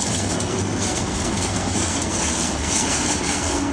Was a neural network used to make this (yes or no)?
yes